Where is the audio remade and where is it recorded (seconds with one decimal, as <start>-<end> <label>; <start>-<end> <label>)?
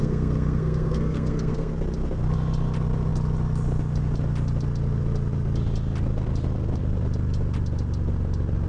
0.0-1.7 remade; 1.7-8.7 recorded